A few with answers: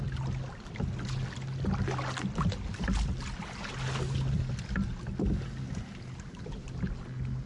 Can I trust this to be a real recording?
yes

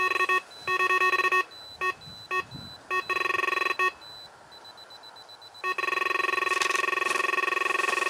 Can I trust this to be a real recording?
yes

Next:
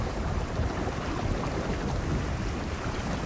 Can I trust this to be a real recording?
no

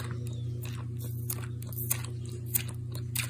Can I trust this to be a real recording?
yes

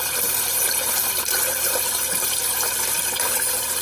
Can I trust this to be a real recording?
no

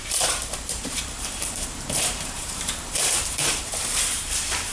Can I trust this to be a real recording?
no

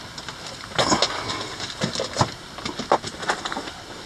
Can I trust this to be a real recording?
yes